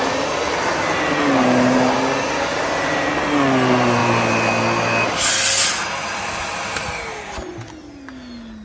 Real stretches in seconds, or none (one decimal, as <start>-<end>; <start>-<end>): 0.0-8.6